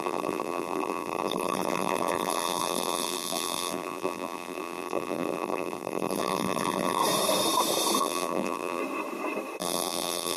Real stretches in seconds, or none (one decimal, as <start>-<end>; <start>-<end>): 7.0-8.0; 8.8-9.6